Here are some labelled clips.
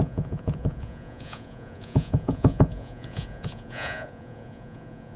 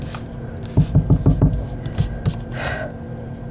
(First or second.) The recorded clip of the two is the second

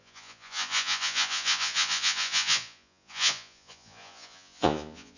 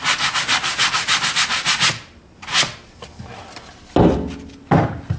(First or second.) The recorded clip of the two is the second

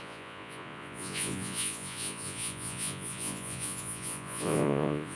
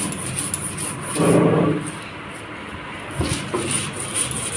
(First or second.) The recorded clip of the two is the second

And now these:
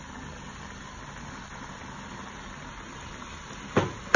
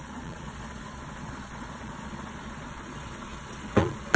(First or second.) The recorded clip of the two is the first